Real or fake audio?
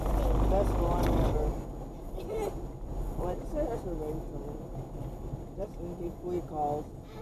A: real